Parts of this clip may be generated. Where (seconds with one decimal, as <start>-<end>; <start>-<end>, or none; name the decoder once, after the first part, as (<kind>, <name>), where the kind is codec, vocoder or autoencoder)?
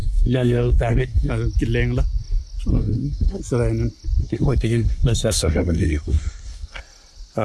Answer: 0.0-1.3 (codec, SNAC); 2.7-3.4; 4.2-6.8